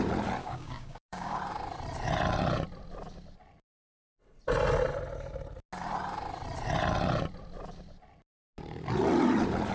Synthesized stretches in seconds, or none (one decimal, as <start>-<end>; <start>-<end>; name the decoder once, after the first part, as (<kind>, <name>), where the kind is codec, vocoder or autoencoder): 0.4-1.4 (codec, DAC)

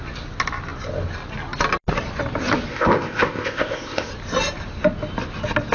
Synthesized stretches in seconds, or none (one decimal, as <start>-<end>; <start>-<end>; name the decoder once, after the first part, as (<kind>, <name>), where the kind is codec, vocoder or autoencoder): 2.7-4.1 (codec, ZipCodec)